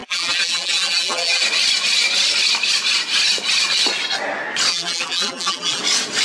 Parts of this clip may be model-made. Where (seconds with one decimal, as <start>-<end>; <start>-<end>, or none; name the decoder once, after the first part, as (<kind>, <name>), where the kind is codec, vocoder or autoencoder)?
0.0-1.4 (vocoder, BigVGAN v2); 4.7-5.8